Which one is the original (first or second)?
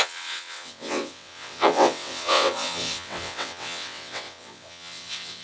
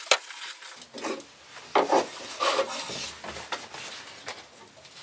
second